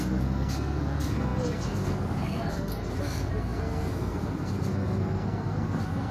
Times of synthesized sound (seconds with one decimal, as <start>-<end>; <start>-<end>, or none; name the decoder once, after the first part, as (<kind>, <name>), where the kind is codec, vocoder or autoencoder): 0.0-6.1 (codec, SNAC)